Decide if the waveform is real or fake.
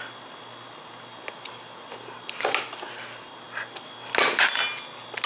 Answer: real